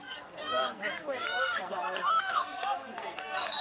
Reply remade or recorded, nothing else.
remade